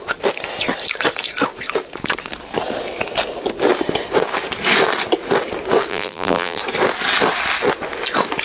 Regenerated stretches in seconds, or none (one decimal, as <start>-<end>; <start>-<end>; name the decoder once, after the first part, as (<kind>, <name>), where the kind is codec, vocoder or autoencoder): 5.9-6.6 (vocoder, BigVGAN v2)